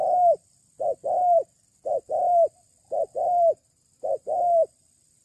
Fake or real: fake